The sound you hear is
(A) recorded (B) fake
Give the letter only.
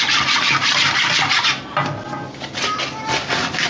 A